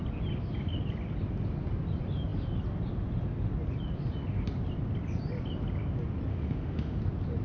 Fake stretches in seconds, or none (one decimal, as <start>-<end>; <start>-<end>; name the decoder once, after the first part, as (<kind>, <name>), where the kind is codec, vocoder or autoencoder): 6.3-7.0 (autoencoder, DAC-VAE)